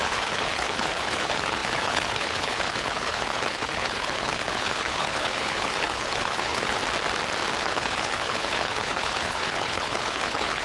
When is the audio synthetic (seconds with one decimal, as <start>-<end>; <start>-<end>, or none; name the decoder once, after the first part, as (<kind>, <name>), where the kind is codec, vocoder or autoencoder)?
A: 0.0-6.8 (codec, HILCodec); 7.6-10.6